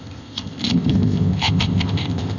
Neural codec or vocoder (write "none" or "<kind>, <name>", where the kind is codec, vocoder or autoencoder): codec, ZipCodec